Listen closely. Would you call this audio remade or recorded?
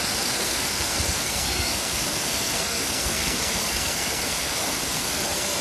remade